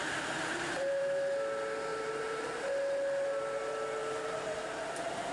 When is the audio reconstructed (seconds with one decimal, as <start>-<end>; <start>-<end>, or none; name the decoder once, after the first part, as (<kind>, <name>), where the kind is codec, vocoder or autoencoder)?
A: 0.0-1.0 (vocoder, BigVGAN v2); 1.9-2.6; 4.0-4.6